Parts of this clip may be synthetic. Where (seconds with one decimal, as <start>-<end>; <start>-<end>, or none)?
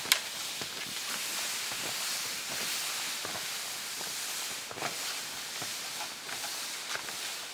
none